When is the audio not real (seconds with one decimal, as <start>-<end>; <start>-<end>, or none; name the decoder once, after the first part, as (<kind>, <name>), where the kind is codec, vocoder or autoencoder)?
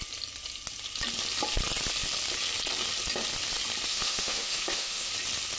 3.9-5.1 (autoencoder, DAC-VAE)